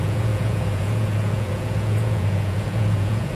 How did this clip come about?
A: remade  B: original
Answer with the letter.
A